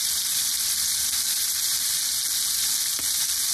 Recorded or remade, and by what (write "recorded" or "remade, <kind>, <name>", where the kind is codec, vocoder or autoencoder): recorded